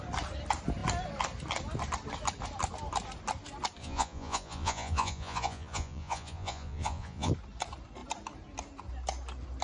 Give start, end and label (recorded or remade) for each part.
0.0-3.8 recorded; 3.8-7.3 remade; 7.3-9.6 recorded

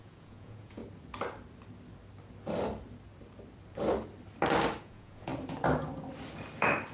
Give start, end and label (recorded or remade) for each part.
0.0-0.8 remade; 0.8-4.8 recorded; 4.8-5.3 remade; 5.3-6.9 recorded

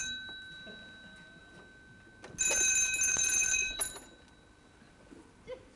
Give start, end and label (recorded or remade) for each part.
0.0-3.1 recorded; 3.1-3.8 remade; 3.8-5.8 recorded

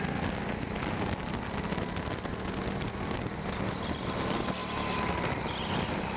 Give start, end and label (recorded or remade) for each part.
0.0-6.2 recorded

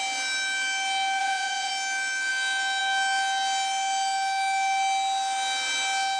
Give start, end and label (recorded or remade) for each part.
0.0-1.2 recorded; 1.2-1.7 remade; 1.7-6.2 recorded

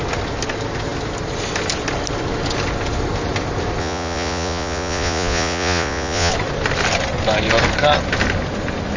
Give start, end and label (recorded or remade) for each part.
0.0-3.8 recorded; 3.8-6.3 remade; 6.3-9.0 recorded